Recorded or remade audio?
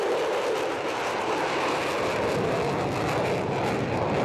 remade